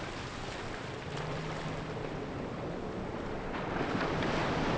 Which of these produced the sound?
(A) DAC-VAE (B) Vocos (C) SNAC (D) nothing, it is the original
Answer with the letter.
D